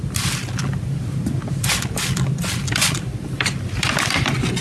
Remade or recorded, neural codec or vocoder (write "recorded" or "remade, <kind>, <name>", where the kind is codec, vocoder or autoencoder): recorded